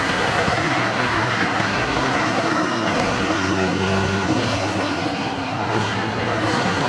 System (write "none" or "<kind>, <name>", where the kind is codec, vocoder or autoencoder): codec, SNAC